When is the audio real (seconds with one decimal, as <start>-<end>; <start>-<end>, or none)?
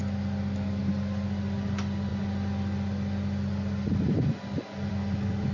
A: 0.0-5.5